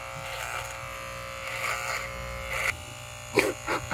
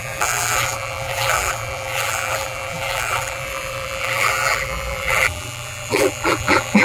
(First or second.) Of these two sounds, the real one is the first